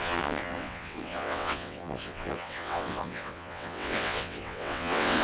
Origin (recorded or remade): remade